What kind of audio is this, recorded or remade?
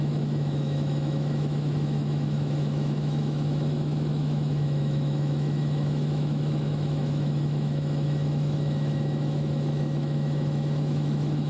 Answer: remade